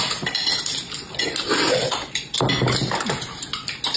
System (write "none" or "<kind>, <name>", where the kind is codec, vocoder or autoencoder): none